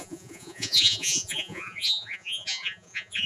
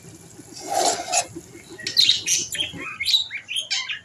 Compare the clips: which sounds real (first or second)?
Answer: second